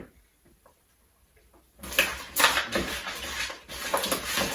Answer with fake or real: real